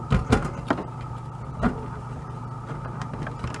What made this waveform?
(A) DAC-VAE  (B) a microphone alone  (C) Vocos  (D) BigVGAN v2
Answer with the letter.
B